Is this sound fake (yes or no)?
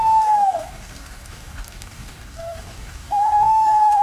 yes